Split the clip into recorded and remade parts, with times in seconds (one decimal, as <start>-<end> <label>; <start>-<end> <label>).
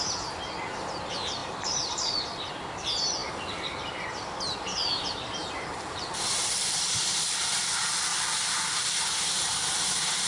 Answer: 0.0-1.4 recorded; 1.4-2.5 remade; 2.5-5.4 recorded; 5.4-7.0 remade; 7.0-8.1 recorded; 8.1-8.9 remade; 8.9-10.3 recorded